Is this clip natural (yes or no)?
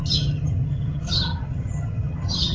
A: no